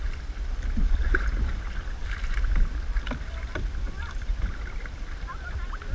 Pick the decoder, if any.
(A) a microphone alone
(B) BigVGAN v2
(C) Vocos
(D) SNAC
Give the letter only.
B